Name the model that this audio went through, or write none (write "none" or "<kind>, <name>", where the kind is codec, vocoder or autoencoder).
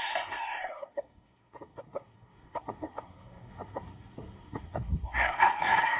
codec, SNAC